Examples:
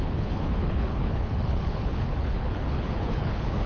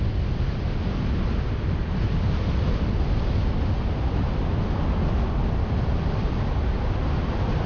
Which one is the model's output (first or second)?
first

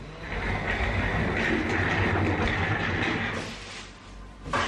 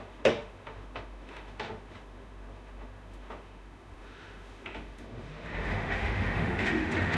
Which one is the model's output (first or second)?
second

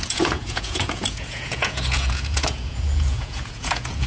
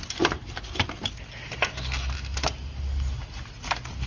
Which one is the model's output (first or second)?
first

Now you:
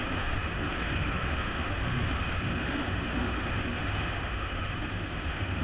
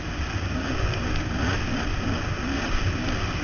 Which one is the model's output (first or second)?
first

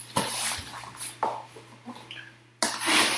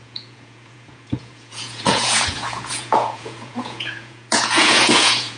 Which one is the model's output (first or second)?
second